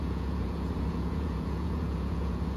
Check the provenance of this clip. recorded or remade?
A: remade